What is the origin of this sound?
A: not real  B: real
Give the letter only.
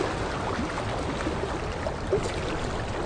B